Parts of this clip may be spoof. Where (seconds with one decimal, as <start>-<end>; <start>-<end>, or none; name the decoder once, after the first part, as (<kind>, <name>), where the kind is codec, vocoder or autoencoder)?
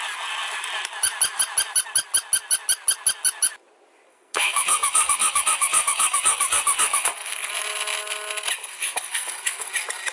4.1-7.5 (codec, SNAC); 8.6-9.7